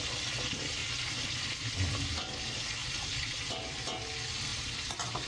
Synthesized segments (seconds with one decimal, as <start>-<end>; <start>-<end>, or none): none